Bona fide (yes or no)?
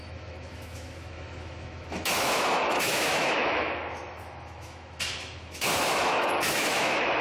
no